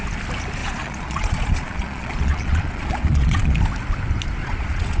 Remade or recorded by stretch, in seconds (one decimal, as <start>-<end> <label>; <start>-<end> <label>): 0.0-0.6 recorded; 0.6-3.6 remade; 3.6-4.4 recorded; 4.4-5.0 remade